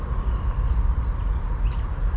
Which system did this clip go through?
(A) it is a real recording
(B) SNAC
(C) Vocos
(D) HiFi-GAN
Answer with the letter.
A